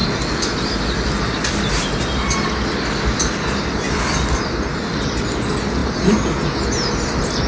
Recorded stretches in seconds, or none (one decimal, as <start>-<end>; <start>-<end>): 0.0-7.5